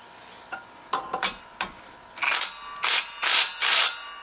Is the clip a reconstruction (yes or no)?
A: no